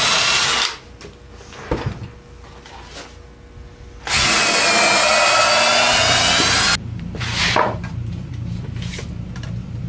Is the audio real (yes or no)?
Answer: yes